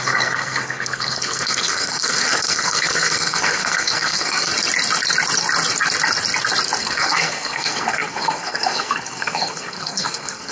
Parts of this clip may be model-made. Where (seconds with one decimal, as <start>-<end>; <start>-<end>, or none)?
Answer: 0.0-4.5; 6.8-10.5